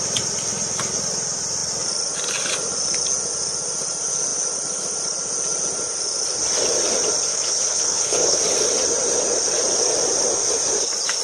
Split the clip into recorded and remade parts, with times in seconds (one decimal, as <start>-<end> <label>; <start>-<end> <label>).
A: 0.0-7.3 recorded; 7.3-8.4 remade; 8.4-11.2 recorded

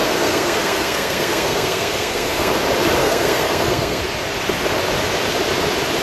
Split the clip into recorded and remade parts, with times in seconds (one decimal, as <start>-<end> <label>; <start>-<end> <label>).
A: 0.0-2.5 remade; 2.5-3.0 recorded; 3.0-4.0 remade; 4.0-6.0 recorded

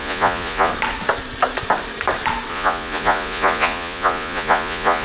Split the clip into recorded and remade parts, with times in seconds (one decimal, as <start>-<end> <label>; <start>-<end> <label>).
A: 0.0-0.7 remade; 0.7-2.5 recorded; 2.5-5.0 remade

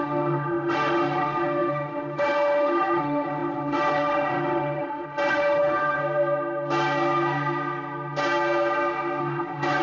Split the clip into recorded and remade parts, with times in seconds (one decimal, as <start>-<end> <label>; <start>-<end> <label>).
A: 0.0-6.0 remade; 6.0-9.2 recorded; 9.2-9.8 remade